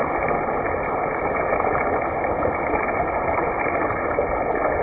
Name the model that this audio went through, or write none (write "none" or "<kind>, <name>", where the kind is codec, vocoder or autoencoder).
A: none